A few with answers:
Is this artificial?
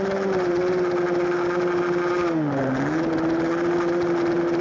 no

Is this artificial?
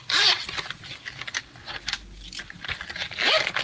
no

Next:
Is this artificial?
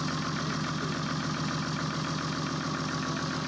no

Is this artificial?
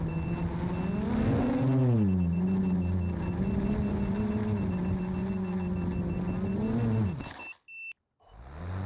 no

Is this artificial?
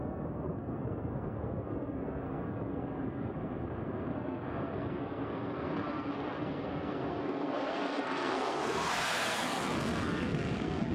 yes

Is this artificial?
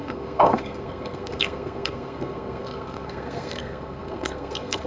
yes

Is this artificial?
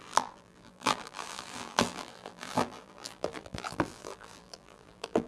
yes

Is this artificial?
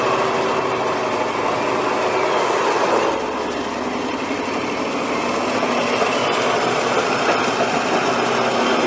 no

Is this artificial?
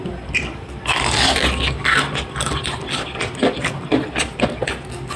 no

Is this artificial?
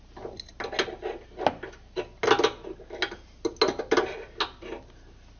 no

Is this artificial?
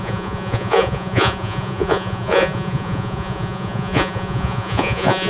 yes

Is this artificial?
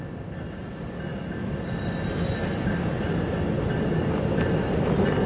no